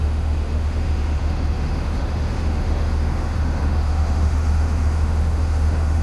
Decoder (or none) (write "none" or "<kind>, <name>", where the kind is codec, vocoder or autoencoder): autoencoder, DAC-VAE